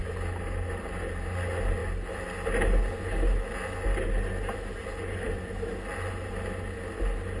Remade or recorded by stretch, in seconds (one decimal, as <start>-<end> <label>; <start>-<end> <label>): 0.0-7.4 recorded